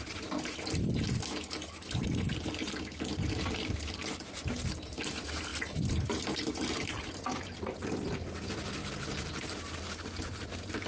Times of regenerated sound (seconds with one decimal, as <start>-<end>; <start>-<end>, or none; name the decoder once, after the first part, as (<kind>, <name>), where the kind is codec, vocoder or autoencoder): 5.5-7.1 (vocoder, BigVGAN v2); 8.8-10.9